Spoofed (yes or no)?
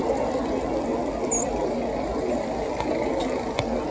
no